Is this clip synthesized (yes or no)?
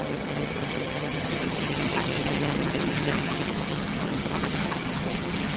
yes